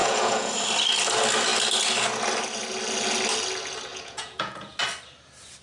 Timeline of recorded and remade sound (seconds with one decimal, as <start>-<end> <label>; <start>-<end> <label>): 0.0-0.5 remade; 0.5-3.9 recorded; 3.9-4.8 remade; 4.8-5.6 recorded